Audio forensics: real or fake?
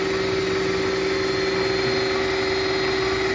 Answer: real